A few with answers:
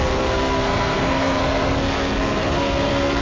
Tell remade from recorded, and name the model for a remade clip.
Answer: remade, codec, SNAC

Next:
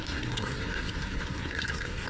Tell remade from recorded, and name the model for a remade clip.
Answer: remade, codec, SNAC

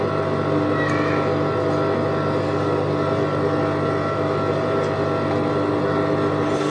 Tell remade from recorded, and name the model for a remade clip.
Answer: recorded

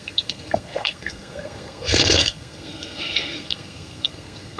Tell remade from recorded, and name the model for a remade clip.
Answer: remade, codec, SNAC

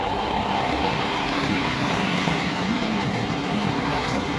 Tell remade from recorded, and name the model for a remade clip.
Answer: remade, codec, SNAC